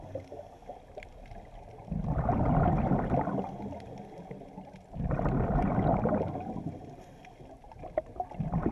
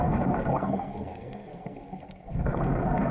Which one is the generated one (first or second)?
second